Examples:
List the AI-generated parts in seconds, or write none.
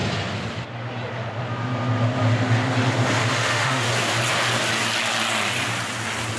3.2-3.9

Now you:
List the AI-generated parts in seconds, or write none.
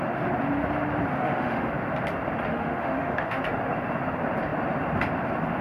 1.1-1.7; 2.5-3.4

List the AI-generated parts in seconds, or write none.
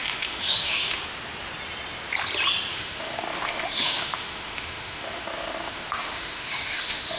0.0-1.0; 2.7-7.2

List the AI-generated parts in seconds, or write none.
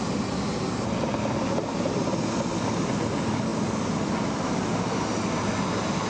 none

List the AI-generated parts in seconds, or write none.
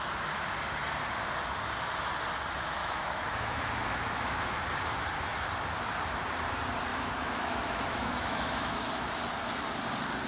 2.8-4.6; 6.9-8.9